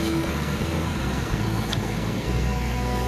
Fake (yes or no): yes